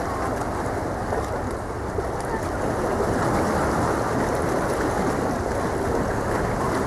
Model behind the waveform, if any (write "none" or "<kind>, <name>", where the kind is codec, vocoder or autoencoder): none